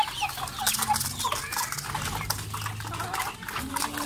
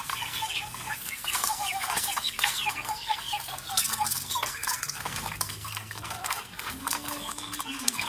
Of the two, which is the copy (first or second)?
second